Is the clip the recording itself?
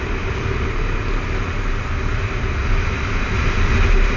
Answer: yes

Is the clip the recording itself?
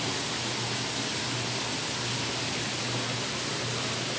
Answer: yes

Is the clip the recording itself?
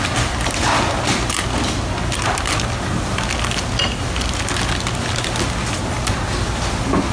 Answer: yes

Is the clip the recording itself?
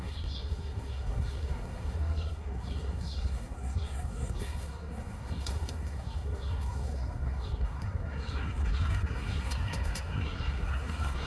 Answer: no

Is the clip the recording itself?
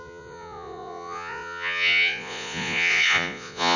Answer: no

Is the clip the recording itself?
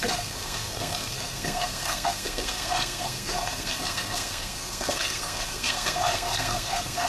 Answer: no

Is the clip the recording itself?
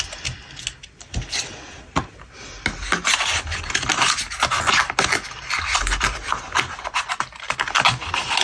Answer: yes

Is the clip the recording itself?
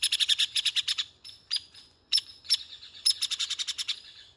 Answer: no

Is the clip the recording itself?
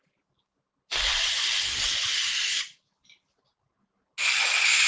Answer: yes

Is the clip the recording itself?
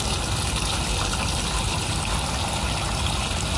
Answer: yes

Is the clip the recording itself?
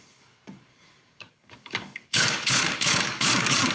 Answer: no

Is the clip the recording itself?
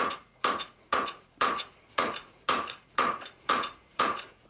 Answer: no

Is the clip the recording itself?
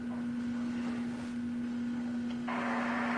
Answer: yes